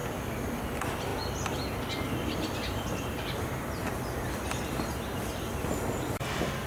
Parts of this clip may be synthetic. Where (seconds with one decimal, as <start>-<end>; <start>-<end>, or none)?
none